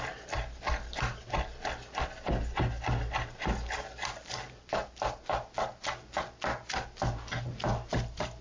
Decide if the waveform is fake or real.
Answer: real